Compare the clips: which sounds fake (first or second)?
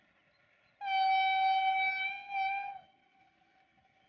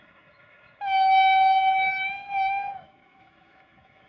second